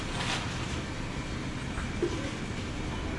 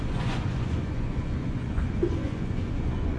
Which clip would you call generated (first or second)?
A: second